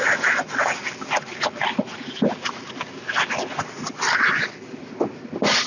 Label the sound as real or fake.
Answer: real